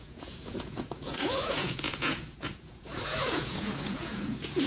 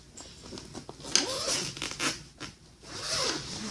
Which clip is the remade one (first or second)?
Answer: first